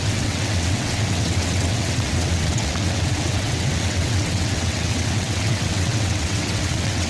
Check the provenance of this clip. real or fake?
fake